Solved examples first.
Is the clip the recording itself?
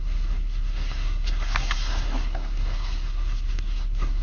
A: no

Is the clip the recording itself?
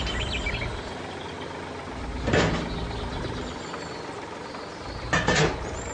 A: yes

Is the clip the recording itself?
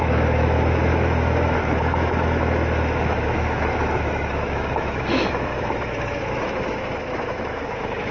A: no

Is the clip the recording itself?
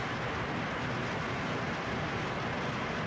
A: yes